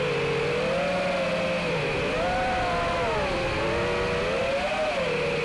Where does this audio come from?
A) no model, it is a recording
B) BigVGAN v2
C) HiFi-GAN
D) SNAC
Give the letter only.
A